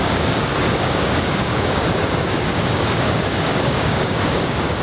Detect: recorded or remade remade